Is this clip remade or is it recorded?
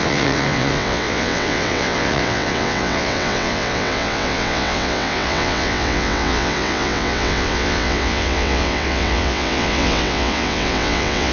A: remade